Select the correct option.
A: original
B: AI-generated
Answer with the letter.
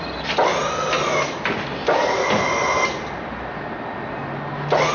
A